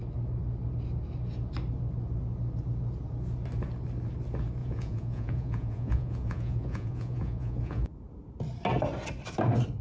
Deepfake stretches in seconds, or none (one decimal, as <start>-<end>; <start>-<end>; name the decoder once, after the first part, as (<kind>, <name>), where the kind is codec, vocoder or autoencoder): 4.6-7.9 (vocoder, Vocos)